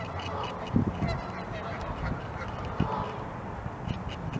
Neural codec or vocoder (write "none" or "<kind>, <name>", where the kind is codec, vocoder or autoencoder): none